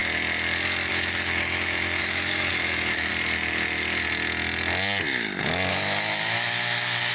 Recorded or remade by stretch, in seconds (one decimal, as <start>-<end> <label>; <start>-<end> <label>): 0.0-0.9 recorded; 0.9-3.1 remade; 3.1-5.7 recorded; 5.7-7.1 remade